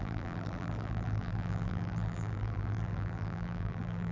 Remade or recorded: remade